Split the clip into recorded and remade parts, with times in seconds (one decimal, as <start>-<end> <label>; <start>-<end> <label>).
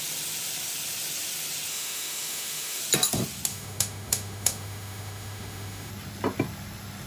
0.0-1.7 recorded; 1.7-2.8 remade; 2.8-3.5 recorded; 3.5-5.9 remade; 5.9-7.1 recorded